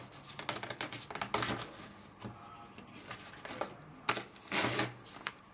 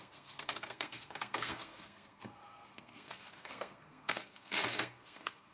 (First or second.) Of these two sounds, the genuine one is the first